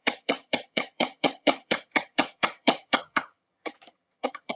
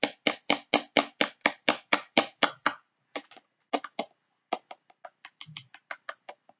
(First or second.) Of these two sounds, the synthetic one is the first